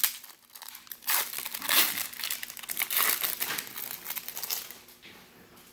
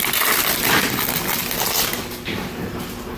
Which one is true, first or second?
first